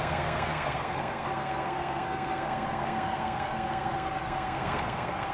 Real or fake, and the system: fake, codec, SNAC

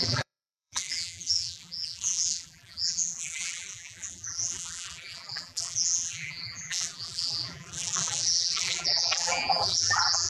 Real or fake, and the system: fake, vocoder, BigVGAN v2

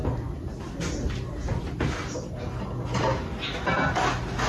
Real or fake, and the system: real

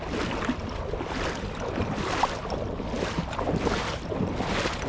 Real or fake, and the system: real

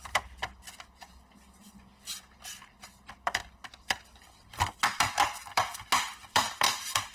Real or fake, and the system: fake, vocoder, BigVGAN v2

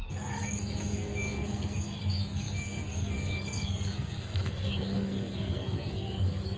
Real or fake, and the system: fake, codec, SNAC